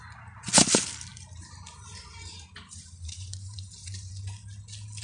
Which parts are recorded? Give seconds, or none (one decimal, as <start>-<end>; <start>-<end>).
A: 0.0-1.1; 4.1-5.0